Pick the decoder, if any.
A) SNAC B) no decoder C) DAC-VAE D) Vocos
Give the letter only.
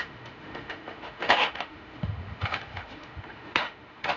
C